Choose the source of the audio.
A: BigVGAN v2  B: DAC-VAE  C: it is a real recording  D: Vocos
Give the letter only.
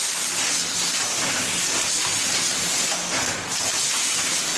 C